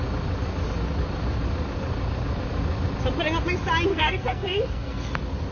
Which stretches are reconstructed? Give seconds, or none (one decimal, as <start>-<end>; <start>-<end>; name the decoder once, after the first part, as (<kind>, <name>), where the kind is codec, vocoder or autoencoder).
3.9-5.1 (codec, SNAC)